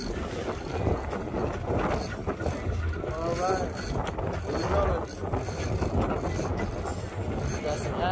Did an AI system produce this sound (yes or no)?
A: no